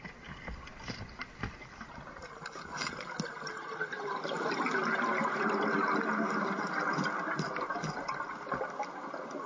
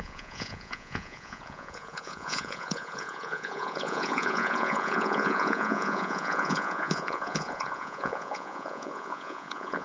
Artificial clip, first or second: second